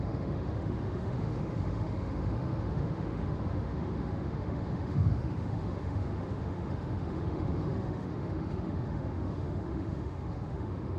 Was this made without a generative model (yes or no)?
no